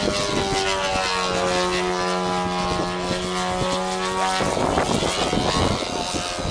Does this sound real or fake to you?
real